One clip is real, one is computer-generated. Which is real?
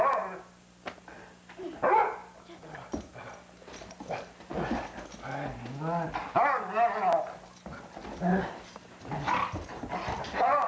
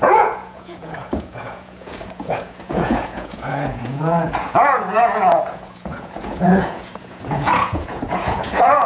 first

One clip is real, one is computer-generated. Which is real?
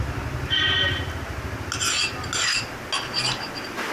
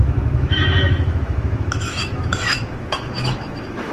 first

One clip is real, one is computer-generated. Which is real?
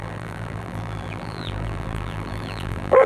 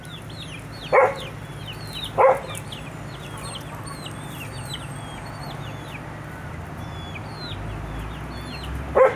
second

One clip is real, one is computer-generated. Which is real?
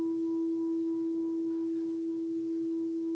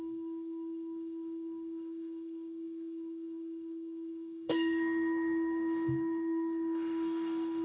first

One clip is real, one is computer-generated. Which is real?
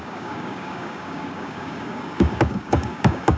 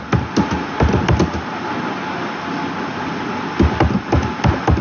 second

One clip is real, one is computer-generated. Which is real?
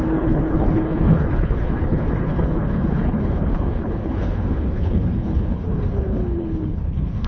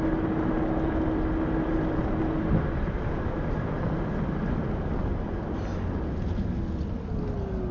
second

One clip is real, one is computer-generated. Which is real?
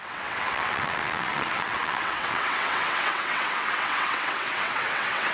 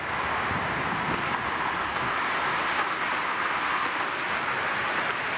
second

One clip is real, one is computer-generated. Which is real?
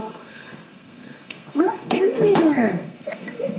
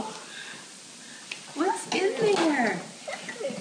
second